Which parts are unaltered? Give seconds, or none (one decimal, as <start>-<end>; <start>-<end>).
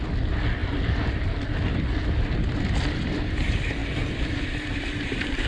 0.0-5.5